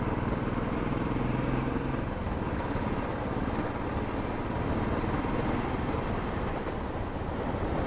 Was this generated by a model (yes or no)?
yes